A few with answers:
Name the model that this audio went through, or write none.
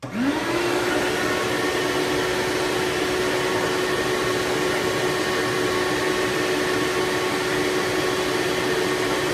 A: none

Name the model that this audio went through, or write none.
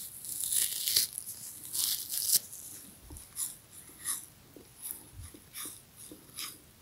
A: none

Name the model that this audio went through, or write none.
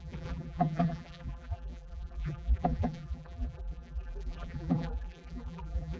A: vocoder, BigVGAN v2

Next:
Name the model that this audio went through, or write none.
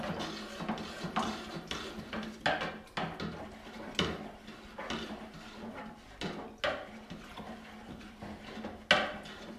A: none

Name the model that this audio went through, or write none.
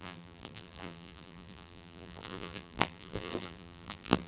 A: vocoder, BigVGAN v2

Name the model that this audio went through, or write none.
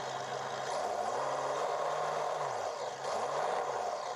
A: none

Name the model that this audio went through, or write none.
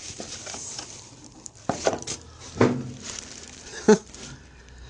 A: vocoder, BigVGAN v2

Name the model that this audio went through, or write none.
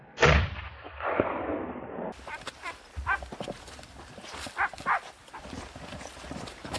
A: vocoder, BigVGAN v2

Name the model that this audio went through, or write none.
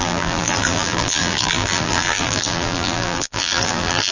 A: vocoder, BigVGAN v2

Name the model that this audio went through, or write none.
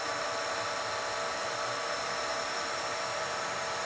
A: vocoder, BigVGAN v2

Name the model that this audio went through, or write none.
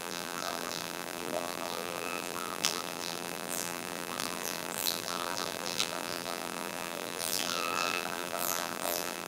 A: vocoder, BigVGAN v2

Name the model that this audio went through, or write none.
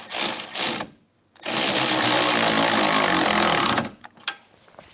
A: vocoder, BigVGAN v2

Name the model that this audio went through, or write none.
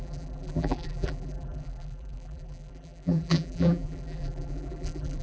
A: vocoder, BigVGAN v2